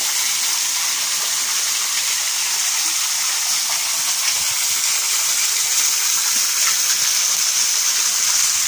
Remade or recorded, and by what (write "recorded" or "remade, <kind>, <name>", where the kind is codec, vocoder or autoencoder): recorded